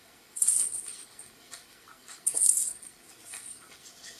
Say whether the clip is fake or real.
fake